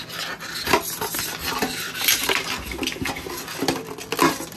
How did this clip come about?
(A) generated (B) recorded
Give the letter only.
B